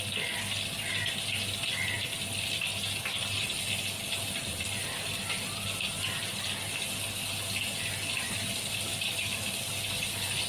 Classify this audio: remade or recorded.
recorded